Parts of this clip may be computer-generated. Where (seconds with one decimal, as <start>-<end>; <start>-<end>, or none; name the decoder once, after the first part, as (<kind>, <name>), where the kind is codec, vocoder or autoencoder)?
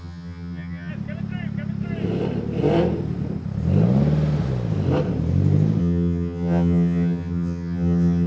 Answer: 0.0-0.9 (vocoder, HiFi-GAN); 5.8-8.3